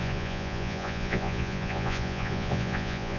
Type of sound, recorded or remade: remade